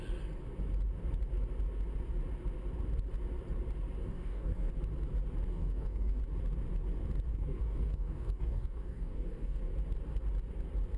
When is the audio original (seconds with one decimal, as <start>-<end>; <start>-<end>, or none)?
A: 0.0-4.0; 4.7-5.5; 6.2-7.3; 9.6-11.0